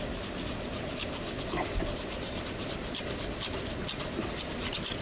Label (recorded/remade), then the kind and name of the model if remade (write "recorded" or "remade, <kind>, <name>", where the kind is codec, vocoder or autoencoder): recorded